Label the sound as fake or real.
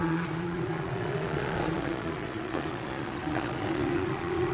fake